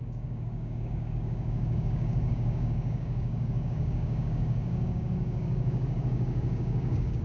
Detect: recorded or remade remade